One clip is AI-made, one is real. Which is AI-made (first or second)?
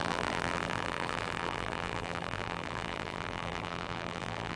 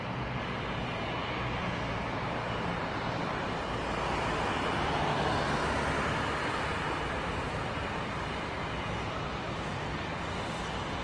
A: first